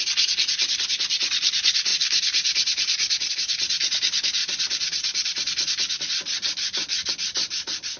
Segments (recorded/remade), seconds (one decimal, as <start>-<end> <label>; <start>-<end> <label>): 0.0-8.0 recorded